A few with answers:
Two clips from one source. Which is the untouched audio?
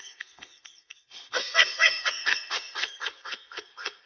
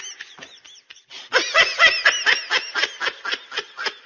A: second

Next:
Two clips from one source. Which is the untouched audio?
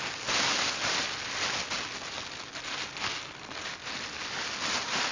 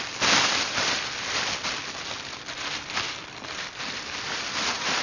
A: first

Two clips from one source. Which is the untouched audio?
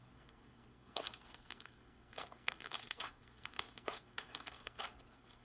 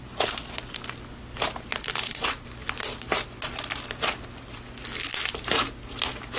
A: second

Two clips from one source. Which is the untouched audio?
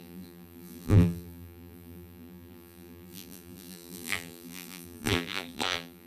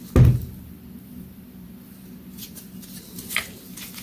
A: second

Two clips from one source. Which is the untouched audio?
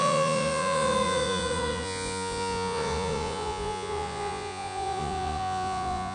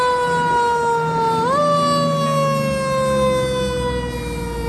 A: second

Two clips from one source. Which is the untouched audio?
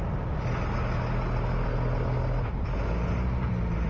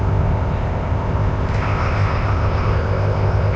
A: first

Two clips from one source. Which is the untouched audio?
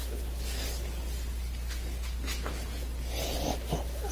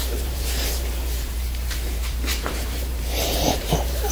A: first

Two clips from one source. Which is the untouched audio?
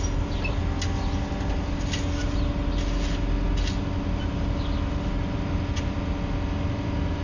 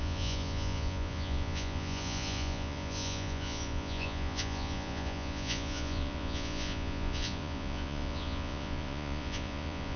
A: first